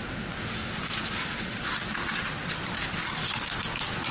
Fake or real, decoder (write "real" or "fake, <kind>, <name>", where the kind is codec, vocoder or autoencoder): real